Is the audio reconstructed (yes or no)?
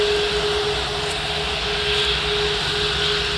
no